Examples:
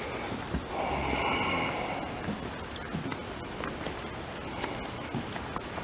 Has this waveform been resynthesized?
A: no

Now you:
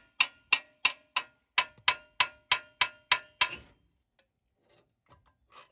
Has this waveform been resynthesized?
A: no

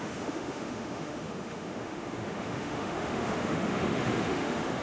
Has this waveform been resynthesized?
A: yes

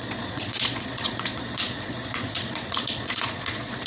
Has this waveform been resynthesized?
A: yes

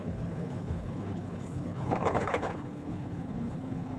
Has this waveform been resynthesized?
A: yes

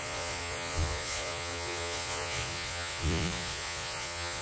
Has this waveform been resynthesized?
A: yes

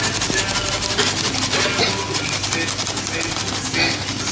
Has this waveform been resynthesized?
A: no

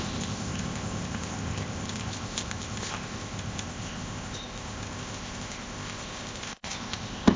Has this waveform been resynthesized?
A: yes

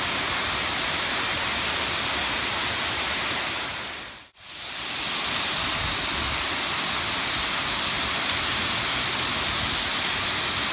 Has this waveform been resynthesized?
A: no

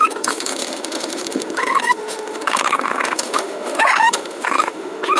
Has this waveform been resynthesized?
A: yes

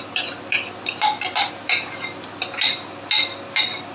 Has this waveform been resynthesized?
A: no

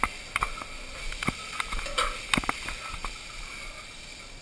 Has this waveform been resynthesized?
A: no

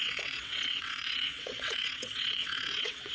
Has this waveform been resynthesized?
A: yes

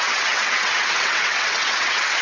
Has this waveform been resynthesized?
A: yes